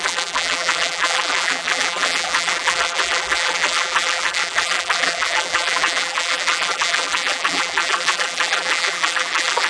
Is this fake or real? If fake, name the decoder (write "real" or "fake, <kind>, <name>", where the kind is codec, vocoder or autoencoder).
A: fake, vocoder, BigVGAN v2